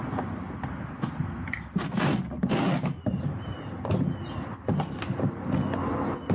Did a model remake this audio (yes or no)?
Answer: no